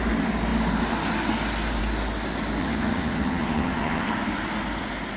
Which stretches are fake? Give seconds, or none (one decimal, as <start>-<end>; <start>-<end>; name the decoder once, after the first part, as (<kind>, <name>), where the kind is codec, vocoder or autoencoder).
2.6-4.0 (vocoder, HiFi-GAN)